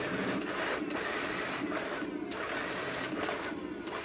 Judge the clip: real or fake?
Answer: real